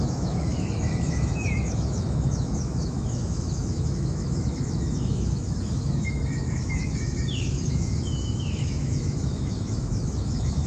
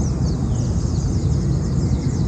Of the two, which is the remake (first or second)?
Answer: first